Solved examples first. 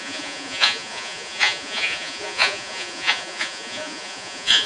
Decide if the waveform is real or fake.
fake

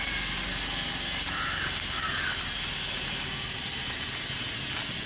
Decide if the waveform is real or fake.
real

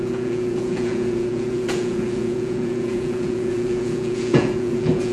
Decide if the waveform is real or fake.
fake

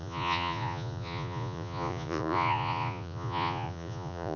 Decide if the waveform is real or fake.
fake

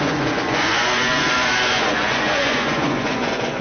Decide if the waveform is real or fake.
fake